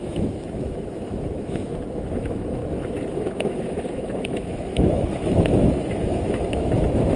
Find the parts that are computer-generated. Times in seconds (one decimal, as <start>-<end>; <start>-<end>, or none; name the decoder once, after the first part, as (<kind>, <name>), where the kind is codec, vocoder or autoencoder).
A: 0.0-2.6 (autoencoder, DAC-VAE); 3.1-7.2